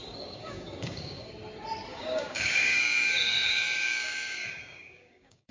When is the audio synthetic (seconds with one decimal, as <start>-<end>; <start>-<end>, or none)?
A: 0.0-1.3; 1.9-5.5